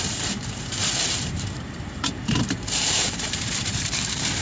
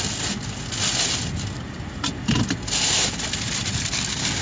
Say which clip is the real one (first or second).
second